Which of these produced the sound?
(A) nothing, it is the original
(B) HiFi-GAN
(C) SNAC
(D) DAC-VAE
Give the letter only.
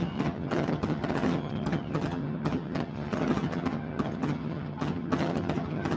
B